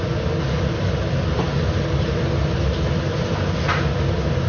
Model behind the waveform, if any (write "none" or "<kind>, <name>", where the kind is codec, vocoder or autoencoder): none